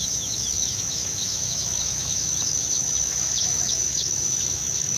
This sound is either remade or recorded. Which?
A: remade